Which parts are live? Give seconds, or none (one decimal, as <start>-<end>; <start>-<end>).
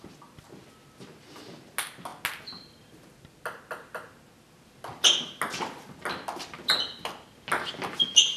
0.0-8.4